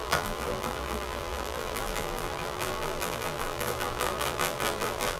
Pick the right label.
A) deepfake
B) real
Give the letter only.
A